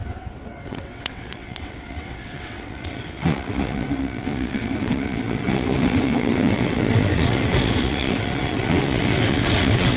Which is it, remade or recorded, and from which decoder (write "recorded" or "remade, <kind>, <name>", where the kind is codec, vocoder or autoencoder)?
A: remade, vocoder, WaveNeXt